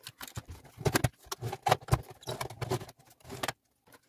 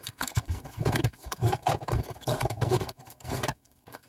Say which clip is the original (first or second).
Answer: first